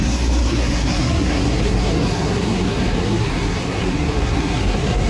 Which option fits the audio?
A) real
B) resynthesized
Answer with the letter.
B